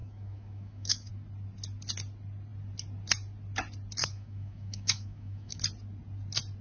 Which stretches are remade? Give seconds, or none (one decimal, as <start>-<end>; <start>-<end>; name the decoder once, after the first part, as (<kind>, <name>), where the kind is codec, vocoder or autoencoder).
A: 0.0-1.1 (autoencoder, DAC-VAE); 4.0-5.6